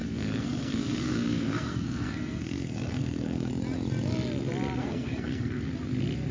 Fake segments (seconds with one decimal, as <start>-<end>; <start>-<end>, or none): 0.0-3.5; 4.8-5.6